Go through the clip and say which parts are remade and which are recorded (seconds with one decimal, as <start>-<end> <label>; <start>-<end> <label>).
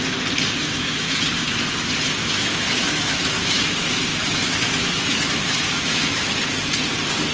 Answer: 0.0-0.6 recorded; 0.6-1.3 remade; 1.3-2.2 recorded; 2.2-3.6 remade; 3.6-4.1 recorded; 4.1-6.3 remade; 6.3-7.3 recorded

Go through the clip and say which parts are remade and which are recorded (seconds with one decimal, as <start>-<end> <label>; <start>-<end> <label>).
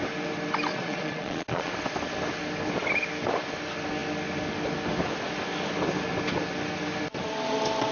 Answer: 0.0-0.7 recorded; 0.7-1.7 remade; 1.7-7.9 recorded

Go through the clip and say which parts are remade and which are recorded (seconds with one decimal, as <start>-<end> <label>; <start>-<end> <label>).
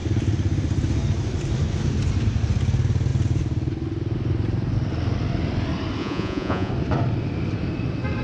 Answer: 0.0-6.0 recorded; 6.0-6.7 remade; 6.7-8.2 recorded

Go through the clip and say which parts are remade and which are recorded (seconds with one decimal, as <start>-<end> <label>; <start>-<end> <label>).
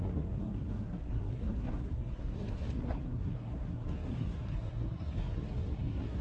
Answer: 0.0-6.2 remade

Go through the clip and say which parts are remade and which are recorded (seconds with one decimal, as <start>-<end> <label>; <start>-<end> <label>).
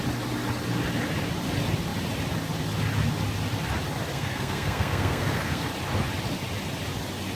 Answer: 0.0-4.1 recorded; 4.1-5.7 remade; 5.7-7.3 recorded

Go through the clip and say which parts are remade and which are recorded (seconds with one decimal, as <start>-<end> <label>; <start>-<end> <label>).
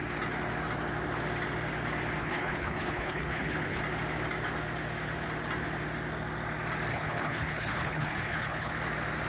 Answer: 0.0-2.2 recorded; 2.2-3.8 remade; 3.8-6.9 recorded; 6.9-8.7 remade; 8.7-9.3 recorded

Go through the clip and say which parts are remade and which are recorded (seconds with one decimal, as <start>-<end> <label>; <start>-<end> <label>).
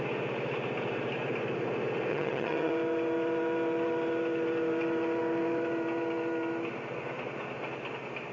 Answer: 0.0-2.1 recorded; 2.1-2.7 remade; 2.7-8.3 recorded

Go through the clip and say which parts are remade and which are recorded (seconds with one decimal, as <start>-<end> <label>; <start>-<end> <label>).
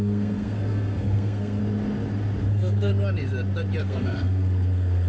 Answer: 0.0-1.6 remade; 1.6-2.4 recorded; 2.4-2.9 remade; 2.9-3.8 recorded; 3.8-5.1 remade